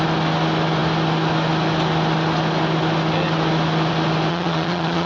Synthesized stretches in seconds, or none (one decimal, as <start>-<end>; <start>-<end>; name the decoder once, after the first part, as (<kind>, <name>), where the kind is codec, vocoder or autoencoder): 4.3-5.1 (vocoder, Vocos)